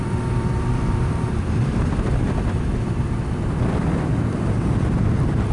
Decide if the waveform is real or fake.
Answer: fake